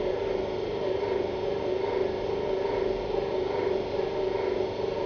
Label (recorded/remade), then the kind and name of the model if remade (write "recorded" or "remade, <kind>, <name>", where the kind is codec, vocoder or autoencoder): remade, vocoder, BigVGAN v2